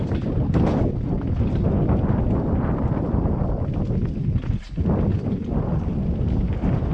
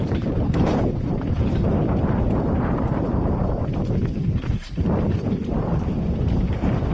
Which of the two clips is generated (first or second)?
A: second